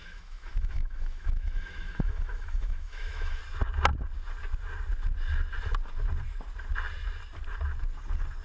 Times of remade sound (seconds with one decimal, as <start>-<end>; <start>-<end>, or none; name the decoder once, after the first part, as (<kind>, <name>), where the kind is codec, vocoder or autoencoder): 0.0-3.4 (autoencoder, DAC-VAE)